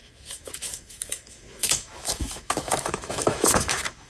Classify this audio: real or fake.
fake